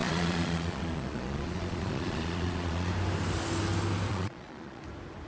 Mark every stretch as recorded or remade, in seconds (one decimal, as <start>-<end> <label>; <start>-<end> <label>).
0.0-2.9 remade; 2.9-4.1 recorded; 4.1-4.8 remade; 4.8-5.3 recorded